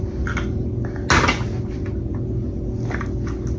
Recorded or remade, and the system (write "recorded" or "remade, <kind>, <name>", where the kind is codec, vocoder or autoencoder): recorded